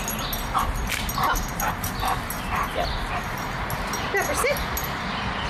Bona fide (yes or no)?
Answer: yes